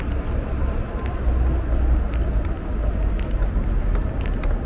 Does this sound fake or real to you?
real